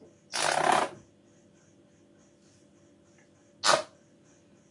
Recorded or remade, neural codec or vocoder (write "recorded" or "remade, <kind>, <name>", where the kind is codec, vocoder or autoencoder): recorded